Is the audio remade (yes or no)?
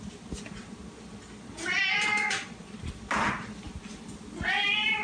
no